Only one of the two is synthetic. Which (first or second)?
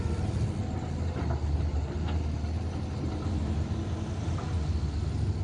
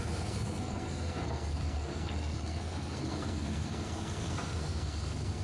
second